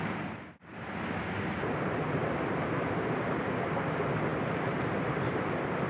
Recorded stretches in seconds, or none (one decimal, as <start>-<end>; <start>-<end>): 0.0-5.9